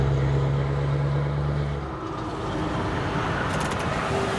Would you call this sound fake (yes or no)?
no